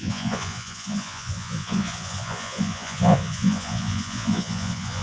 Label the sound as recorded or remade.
remade